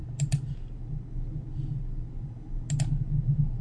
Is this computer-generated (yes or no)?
no